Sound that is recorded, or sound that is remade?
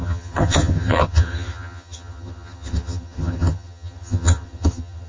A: remade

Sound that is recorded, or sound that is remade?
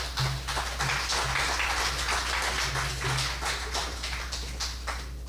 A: recorded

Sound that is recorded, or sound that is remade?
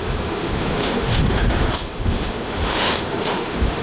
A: remade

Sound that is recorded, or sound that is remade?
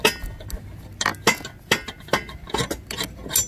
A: recorded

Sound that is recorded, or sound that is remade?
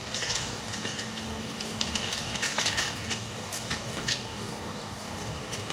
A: remade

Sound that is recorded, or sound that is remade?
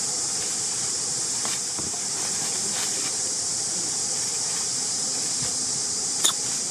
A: remade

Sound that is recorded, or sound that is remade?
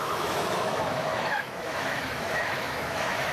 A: remade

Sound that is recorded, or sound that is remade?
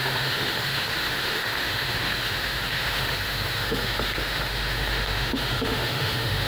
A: remade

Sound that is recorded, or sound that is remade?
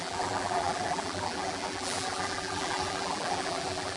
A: remade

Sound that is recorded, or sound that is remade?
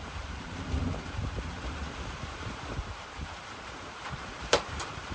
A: remade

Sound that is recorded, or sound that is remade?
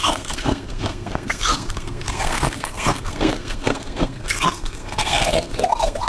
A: remade